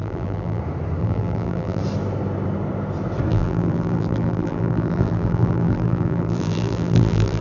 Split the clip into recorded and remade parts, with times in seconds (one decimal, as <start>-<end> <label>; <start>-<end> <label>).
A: 0.0-0.6 remade; 0.6-1.0 recorded; 1.0-1.8 remade; 1.8-3.3 recorded; 3.3-7.4 remade